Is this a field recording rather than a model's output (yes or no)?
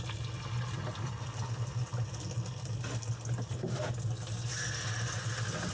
yes